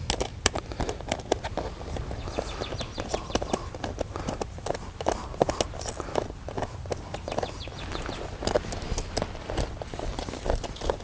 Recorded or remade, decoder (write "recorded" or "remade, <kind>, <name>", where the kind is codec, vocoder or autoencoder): recorded